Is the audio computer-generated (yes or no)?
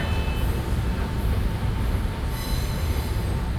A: no